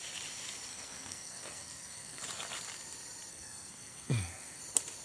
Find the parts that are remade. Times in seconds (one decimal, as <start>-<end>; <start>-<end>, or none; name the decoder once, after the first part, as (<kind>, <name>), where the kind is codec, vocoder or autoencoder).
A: 0.7-2.2 (codec, SNAC); 3.3-4.6